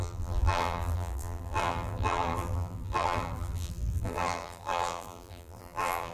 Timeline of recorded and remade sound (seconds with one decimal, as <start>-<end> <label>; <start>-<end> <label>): 0.0-6.1 remade